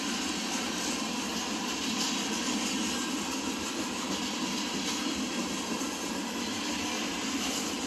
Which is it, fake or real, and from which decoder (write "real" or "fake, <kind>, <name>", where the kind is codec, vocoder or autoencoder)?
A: real